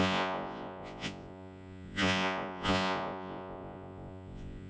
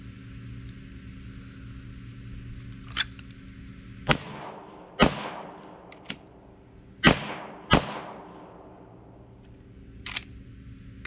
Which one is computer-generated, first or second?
first